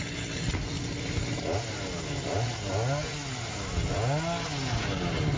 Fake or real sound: real